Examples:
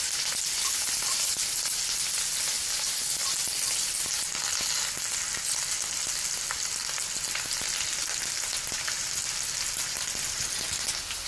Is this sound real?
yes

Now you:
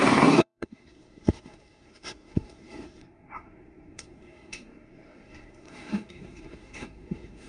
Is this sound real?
no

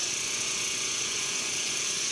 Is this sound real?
no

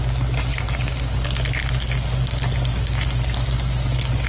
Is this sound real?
yes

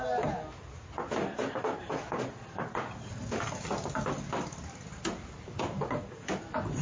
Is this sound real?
yes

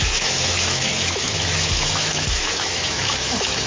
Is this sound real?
no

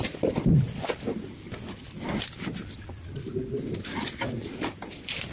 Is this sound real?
yes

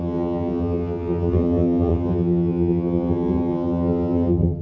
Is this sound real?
no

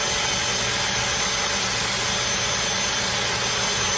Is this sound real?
yes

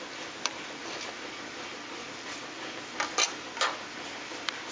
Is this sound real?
yes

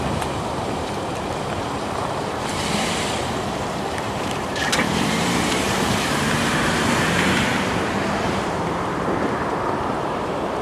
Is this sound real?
no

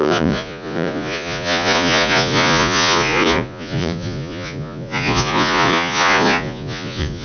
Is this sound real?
no